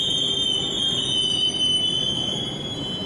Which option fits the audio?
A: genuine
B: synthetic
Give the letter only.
A